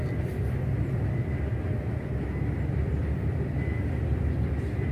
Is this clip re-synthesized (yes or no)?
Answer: no